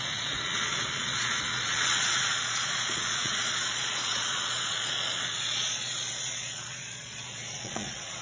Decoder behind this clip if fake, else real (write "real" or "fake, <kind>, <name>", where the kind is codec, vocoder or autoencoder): fake, vocoder, Vocos